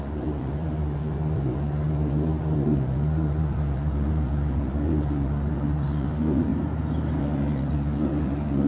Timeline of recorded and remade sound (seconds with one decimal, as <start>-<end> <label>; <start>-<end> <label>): 0.0-6.5 remade; 6.5-7.2 recorded; 7.2-8.7 remade